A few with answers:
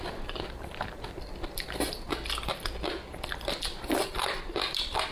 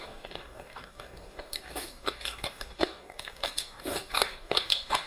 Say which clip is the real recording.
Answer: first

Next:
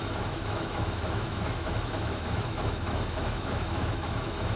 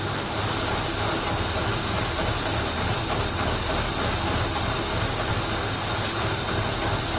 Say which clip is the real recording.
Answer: second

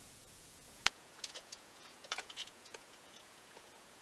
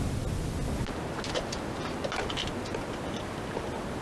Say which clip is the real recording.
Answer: second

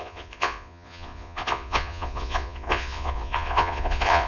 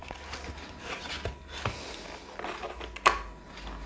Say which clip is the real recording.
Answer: second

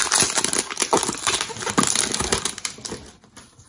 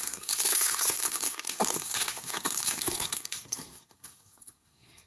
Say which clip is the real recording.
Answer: first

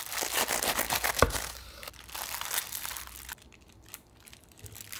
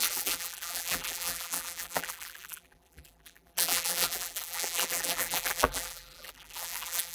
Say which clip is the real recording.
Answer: first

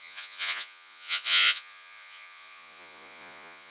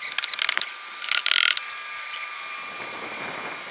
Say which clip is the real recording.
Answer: second